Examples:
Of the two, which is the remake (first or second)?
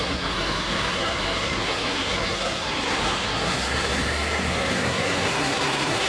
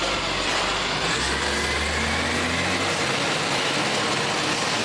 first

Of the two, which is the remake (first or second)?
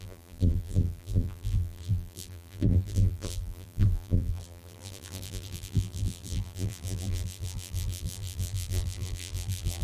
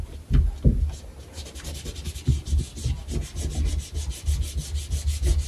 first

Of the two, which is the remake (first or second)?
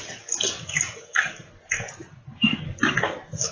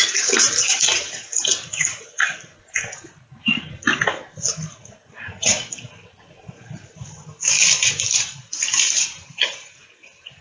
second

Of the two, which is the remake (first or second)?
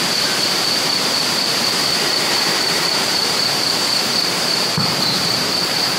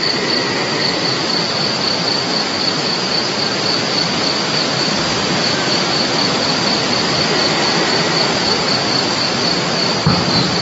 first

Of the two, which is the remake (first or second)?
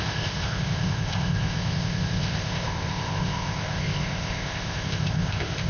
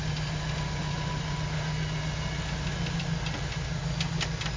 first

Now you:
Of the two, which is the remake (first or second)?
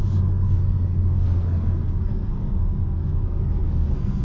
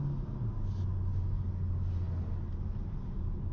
first